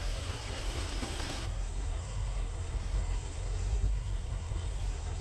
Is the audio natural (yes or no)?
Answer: no